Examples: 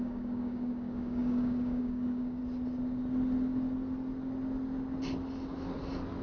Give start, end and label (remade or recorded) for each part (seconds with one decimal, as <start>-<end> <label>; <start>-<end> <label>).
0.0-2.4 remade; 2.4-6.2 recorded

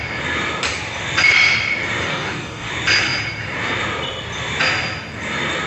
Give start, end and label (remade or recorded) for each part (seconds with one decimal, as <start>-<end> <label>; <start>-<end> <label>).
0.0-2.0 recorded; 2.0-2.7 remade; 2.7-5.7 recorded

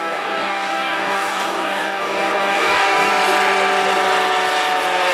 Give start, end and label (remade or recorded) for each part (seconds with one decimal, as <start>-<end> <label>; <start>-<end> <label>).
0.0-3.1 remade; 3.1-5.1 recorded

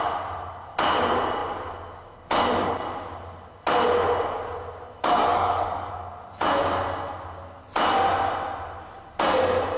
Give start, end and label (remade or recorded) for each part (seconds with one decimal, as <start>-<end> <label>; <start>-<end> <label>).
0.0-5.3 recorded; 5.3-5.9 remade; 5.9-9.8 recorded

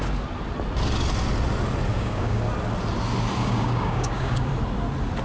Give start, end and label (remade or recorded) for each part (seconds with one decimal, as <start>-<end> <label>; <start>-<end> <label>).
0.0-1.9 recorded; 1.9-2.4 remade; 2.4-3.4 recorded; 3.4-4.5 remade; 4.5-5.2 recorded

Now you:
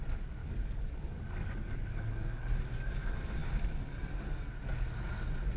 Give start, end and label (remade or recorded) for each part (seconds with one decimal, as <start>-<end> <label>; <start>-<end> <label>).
0.0-0.4 recorded; 0.4-2.5 remade; 2.5-5.6 recorded